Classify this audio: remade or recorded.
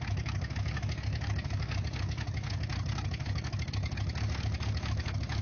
remade